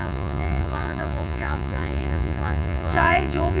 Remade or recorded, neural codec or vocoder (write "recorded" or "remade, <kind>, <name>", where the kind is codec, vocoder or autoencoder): remade, vocoder, Vocos